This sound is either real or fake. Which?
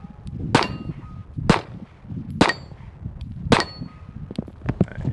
real